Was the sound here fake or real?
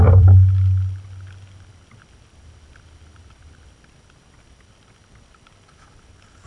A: real